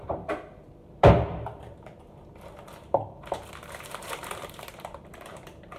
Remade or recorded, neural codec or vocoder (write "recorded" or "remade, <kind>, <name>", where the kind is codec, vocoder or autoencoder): remade, vocoder, BigVGAN v2